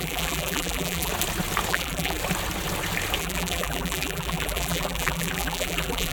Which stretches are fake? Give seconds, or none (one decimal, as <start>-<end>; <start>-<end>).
0.0-1.1; 1.7-2.2; 3.2-6.1